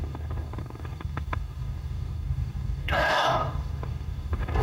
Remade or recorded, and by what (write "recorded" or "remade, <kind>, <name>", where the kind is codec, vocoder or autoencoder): remade, codec, DAC